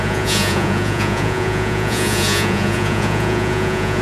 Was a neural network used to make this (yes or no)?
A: yes